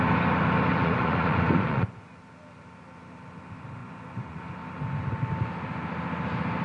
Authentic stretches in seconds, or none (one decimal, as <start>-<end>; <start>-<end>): 0.0-0.7; 2.1-3.8; 4.4-6.6